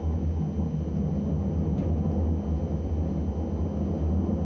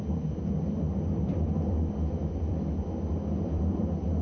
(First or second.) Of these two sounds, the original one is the first